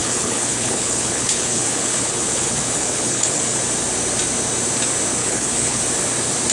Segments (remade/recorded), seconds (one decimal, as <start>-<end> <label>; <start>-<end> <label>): 0.0-3.6 remade; 3.6-5.2 recorded; 5.2-5.8 remade; 5.8-6.5 recorded